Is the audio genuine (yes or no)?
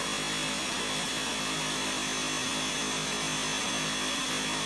yes